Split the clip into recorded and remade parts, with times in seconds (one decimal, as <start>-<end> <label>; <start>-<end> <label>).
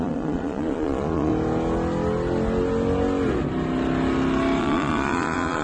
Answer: 0.0-1.3 remade; 1.3-4.6 recorded; 4.6-5.6 remade